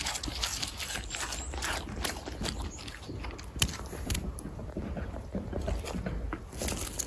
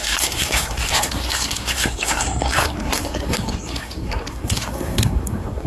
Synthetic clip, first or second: second